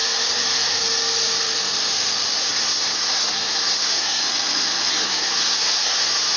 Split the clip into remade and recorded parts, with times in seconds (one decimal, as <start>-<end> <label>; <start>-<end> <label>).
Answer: 0.0-2.4 recorded; 2.4-4.2 remade; 4.2-4.9 recorded; 4.9-6.4 remade